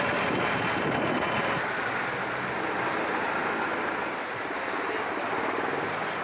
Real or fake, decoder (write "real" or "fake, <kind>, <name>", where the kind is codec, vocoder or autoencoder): real